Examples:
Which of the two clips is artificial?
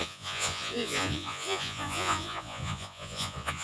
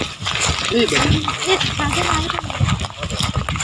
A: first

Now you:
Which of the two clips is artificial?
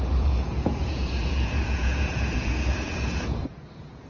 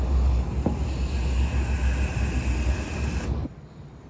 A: first